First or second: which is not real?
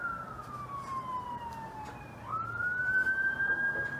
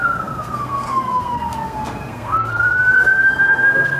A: second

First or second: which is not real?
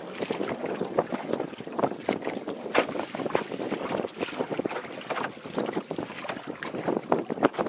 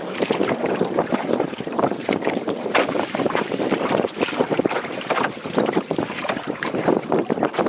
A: second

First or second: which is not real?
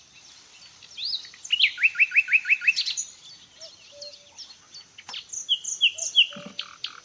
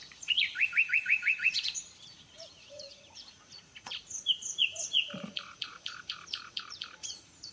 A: second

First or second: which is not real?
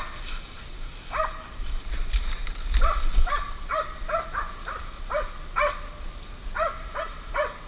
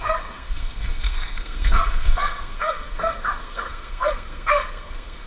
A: second